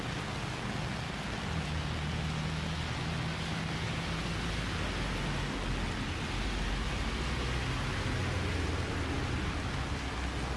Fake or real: real